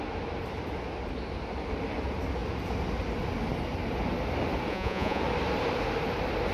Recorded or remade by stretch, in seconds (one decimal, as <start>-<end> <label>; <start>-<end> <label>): 0.0-4.7 recorded; 4.7-5.2 remade; 5.2-6.5 recorded